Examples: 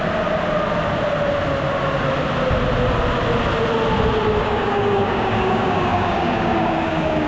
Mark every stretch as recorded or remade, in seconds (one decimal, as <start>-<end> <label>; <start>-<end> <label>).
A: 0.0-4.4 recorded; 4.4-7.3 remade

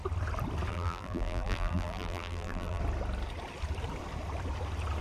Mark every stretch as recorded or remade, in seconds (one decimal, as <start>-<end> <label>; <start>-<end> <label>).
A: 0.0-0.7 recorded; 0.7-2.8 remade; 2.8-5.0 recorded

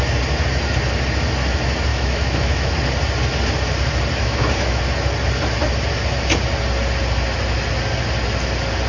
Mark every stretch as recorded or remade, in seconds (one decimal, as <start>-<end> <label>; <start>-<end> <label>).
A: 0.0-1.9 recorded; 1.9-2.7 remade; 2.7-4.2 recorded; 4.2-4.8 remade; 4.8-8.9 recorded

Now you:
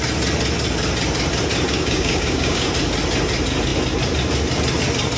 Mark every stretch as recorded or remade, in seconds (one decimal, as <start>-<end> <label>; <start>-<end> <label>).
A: 0.0-1.7 recorded; 1.7-2.7 remade; 2.7-5.2 recorded